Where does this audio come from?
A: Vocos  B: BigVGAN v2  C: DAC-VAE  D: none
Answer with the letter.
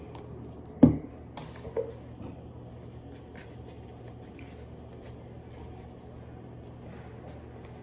D